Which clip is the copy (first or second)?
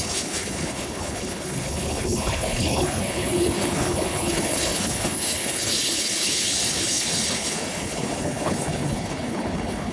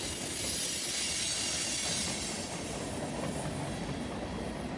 first